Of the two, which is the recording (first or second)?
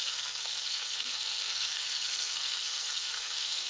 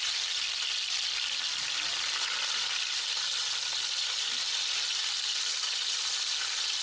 second